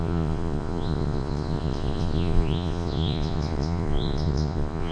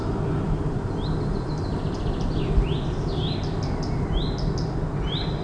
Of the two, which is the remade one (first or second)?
first